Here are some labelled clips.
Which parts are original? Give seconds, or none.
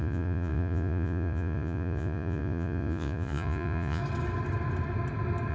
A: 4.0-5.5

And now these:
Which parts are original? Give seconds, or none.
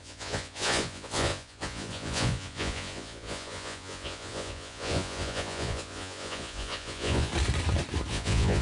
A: 7.3-8.1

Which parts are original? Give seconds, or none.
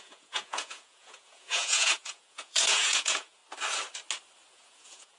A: 3.4-4.5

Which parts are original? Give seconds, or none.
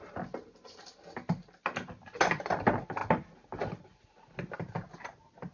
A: 0.0-5.5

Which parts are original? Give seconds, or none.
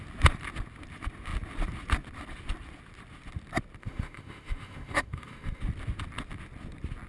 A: 0.0-3.8; 5.6-7.1